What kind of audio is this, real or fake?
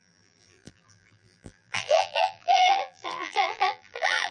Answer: fake